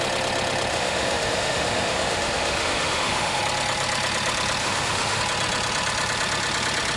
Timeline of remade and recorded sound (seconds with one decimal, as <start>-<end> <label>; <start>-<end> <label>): 0.0-0.7 recorded; 0.7-3.4 remade; 3.4-4.6 recorded; 4.6-5.2 remade; 5.2-7.0 recorded